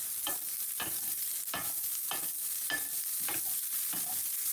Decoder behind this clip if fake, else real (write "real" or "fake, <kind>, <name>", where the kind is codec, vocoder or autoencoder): real